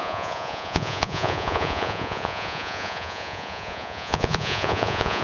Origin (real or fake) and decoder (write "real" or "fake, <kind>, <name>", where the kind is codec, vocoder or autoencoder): fake, vocoder, Vocos